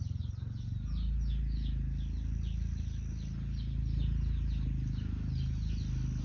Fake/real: real